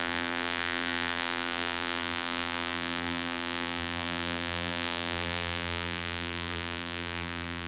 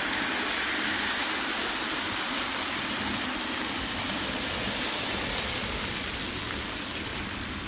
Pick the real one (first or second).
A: second